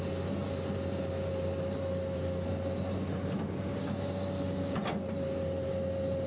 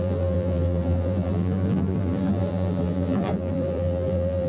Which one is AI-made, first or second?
second